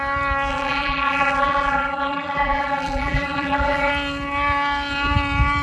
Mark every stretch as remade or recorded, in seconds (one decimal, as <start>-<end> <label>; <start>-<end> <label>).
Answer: 0.0-0.5 recorded; 0.5-3.9 remade; 3.9-5.6 recorded